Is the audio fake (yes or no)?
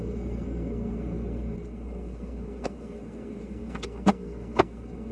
yes